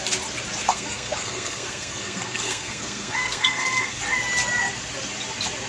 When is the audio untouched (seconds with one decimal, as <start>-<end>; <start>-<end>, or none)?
0.0-0.6; 4.0-5.7